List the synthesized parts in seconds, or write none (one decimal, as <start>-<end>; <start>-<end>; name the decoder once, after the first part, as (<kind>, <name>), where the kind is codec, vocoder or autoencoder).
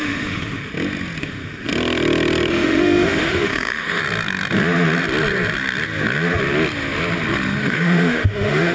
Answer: 0.0-0.7 (autoencoder, DAC-VAE); 1.2-1.7; 2.5-4.0; 7.6-8.7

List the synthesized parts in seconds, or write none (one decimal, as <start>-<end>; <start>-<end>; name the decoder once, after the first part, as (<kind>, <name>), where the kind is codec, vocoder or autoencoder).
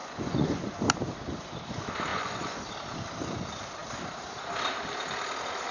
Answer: 0.0-0.6 (vocoder, Vocos); 2.1-2.6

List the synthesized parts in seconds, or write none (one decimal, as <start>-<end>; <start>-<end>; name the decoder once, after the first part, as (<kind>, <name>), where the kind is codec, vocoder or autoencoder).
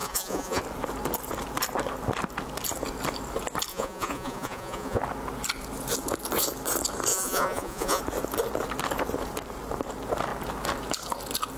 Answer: 0.0-0.6 (vocoder, Vocos); 3.7-5.0; 7.1-8.0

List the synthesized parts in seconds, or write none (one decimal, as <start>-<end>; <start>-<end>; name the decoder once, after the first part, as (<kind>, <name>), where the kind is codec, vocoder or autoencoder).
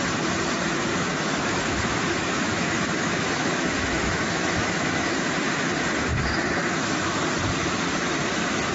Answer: 0.9-5.3 (autoencoder, DAC-VAE); 6.6-7.2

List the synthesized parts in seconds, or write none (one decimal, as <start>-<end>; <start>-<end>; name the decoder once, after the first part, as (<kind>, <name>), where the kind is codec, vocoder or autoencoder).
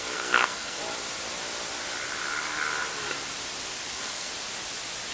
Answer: 0.0-0.8 (codec, SNAC); 3.9-4.3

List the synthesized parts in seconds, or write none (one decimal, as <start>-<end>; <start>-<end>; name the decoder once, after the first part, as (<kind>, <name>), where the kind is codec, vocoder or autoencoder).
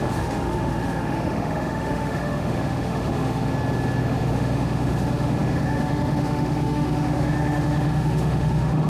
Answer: 0.0-3.5 (autoencoder, DAC-VAE); 4.0-8.9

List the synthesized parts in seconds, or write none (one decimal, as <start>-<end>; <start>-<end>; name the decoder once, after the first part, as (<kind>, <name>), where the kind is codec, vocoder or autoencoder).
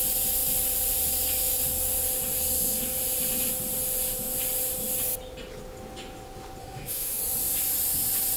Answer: 6.6-7.2 (autoencoder, DAC-VAE)